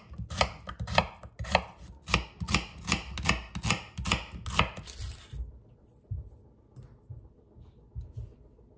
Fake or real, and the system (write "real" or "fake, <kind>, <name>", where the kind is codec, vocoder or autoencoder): real